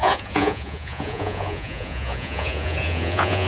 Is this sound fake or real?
fake